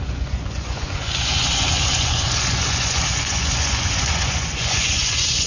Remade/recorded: remade